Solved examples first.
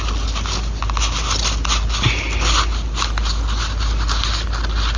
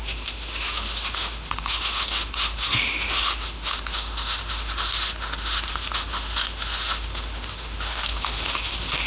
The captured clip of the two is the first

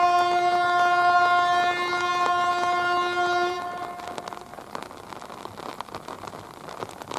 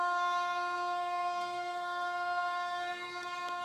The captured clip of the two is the first